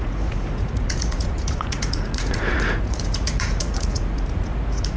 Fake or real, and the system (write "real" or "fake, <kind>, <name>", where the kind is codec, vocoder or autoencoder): fake, vocoder, Vocos